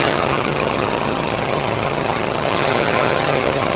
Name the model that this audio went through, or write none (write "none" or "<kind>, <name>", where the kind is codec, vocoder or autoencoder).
vocoder, HiFi-GAN